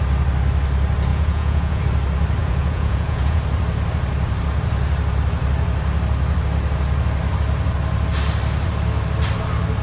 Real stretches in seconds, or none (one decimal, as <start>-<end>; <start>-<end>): 0.0-1.1; 1.8-2.4; 3.4-9.8